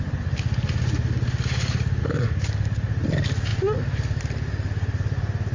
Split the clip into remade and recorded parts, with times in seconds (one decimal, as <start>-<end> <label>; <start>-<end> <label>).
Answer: 0.0-2.0 recorded; 2.0-2.9 remade; 2.9-5.5 recorded